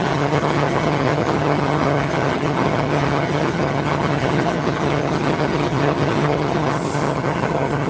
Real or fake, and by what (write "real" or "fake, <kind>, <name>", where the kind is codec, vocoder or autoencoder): fake, vocoder, HiFi-GAN